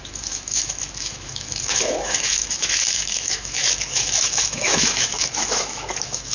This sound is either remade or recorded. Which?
remade